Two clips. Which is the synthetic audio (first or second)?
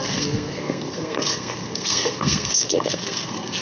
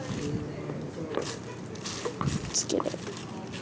first